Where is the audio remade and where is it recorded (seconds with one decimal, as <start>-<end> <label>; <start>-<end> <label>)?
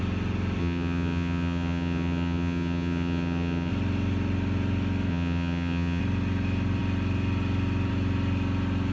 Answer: 0.0-0.6 recorded; 0.6-3.7 remade; 3.7-5.1 recorded; 5.1-6.0 remade; 6.0-8.9 recorded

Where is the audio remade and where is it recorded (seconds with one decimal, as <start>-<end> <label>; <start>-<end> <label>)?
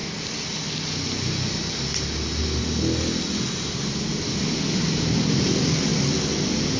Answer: 0.0-6.8 recorded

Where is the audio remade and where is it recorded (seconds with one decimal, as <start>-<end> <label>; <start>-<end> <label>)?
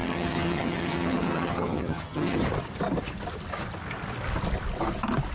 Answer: 0.0-2.4 remade; 2.4-5.3 recorded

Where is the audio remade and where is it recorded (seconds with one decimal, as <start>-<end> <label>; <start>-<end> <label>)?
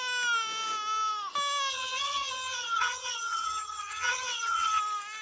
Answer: 0.0-1.7 recorded; 1.7-4.8 remade; 4.8-5.2 recorded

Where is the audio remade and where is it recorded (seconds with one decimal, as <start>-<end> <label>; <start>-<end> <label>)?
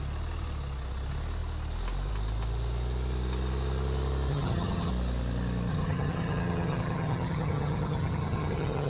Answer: 0.0-4.3 recorded; 4.3-4.9 remade; 4.9-5.7 recorded; 5.7-8.9 remade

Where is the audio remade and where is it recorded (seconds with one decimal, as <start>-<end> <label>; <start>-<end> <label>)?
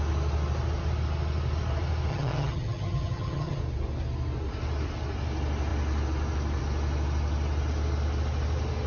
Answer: 0.0-2.1 recorded; 2.1-3.6 remade; 3.6-8.9 recorded